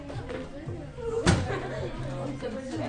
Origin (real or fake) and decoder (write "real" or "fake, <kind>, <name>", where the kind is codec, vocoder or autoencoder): real